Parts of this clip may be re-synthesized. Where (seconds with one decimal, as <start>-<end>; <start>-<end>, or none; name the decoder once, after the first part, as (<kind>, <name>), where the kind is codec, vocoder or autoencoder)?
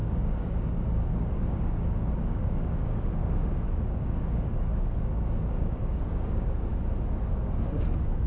0.0-6.7 (codec, DAC); 7.3-8.3